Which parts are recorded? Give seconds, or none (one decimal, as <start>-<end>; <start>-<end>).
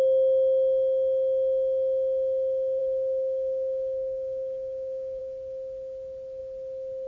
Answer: 0.0-2.8; 5.2-7.1